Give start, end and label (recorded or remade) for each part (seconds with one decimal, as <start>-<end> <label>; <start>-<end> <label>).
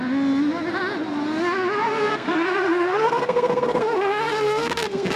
0.0-1.8 recorded; 1.8-5.2 remade